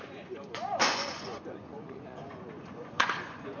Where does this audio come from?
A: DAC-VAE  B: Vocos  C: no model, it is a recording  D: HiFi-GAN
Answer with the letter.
B